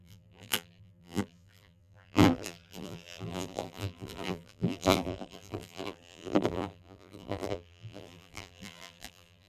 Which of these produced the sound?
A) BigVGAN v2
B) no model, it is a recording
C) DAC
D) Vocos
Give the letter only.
A